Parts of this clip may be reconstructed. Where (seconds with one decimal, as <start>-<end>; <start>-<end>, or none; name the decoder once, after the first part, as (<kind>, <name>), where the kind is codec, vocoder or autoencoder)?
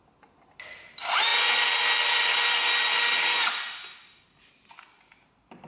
none